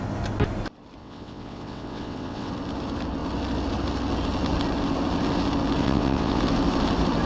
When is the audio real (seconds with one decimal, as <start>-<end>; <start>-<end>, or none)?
0.0-1.0; 2.5-5.8; 6.4-7.3